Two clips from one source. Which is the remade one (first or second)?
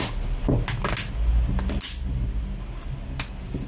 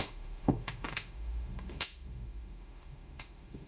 second